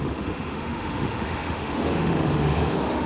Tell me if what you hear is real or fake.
fake